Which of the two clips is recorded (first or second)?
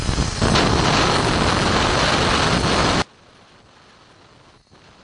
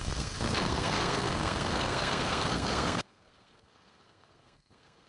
first